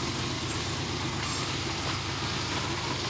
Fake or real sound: real